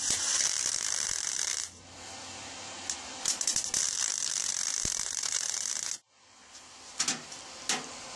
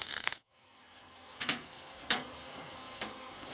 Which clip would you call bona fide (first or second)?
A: first